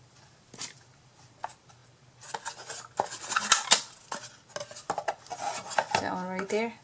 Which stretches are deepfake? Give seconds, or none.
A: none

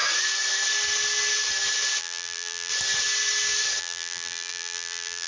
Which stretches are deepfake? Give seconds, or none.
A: 2.0-2.7 (vocoder, BigVGAN v2); 3.8-5.3

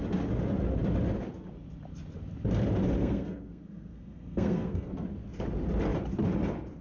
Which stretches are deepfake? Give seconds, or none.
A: 3.0-4.9 (codec, SNAC)

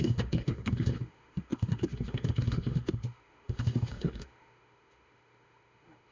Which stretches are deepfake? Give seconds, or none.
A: 0.0-6.1 (autoencoder, DAC-VAE)

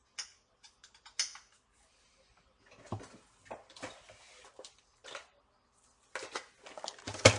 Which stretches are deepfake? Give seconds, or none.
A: none

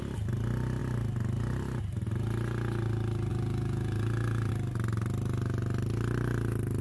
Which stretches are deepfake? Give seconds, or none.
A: 3.3-4.5 (vocoder, Vocos)